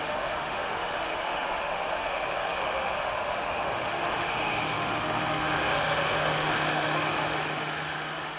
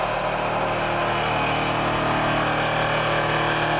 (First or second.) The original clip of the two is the second